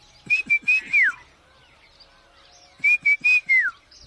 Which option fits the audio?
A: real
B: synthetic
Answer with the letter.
A